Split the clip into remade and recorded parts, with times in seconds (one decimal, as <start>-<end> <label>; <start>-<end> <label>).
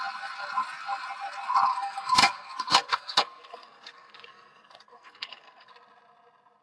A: 0.0-1.7 recorded; 1.7-5.7 remade; 5.7-6.6 recorded